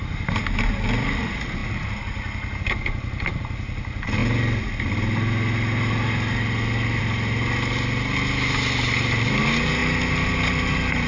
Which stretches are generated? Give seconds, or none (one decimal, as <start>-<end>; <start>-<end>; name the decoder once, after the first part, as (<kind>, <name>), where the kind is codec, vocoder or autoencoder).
none